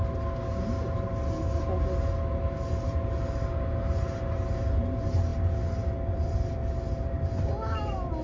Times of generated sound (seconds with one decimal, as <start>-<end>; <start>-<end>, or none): none